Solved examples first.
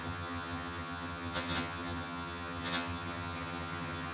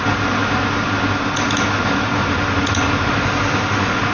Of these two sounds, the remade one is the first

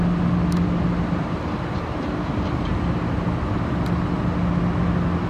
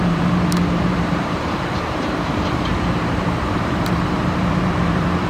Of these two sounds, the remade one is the second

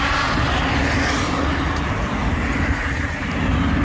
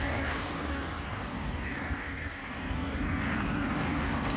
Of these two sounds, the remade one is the second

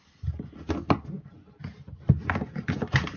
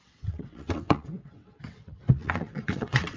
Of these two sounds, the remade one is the second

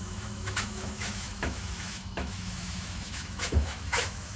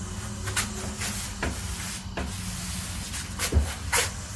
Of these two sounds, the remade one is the first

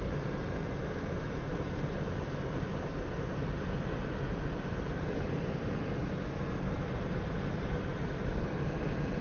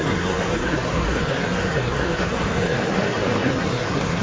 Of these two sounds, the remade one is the second